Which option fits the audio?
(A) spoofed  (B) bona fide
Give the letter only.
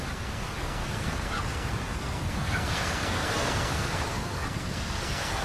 A